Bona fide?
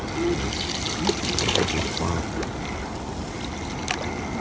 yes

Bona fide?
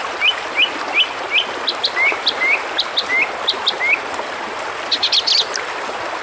yes